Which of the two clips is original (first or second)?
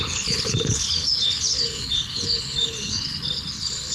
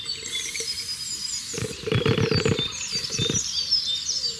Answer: second